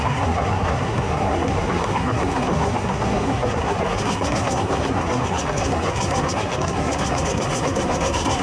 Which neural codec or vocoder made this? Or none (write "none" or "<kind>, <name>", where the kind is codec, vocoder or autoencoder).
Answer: codec, SNAC